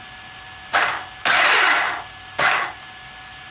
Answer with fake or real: real